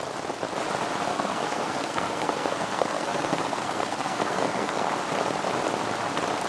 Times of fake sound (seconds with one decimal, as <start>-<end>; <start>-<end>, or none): 1.1-4.9